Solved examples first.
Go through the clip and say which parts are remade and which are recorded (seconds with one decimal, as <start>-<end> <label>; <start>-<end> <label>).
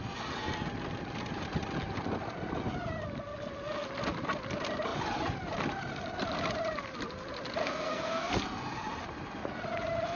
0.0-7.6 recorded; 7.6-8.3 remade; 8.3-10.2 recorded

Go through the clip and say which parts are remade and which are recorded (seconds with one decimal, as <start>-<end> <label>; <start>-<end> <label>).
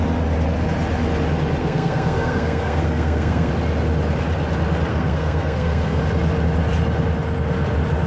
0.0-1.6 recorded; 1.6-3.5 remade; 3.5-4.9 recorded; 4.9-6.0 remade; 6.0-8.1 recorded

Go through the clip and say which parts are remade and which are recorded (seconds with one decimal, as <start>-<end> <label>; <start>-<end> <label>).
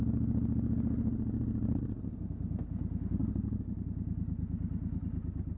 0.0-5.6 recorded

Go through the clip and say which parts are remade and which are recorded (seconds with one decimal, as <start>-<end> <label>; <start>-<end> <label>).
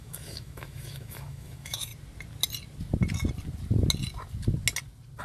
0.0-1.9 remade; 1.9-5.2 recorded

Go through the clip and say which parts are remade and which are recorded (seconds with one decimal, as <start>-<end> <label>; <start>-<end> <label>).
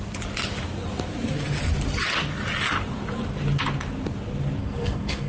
0.0-4.6 recorded; 4.6-5.3 remade